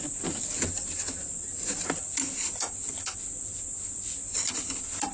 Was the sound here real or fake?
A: real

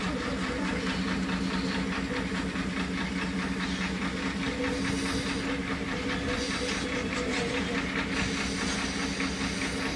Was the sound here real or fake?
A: real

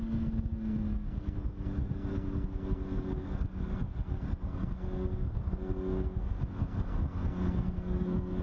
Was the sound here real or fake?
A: fake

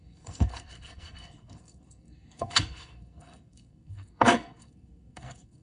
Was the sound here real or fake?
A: fake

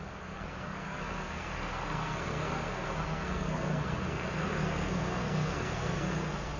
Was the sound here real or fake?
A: fake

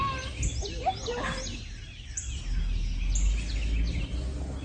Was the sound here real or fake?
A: real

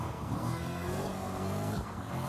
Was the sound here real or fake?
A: fake